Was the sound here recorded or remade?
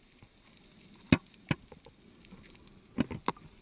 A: recorded